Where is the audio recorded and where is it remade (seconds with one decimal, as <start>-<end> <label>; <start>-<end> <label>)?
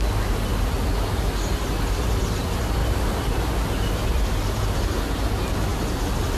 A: 0.0-6.4 recorded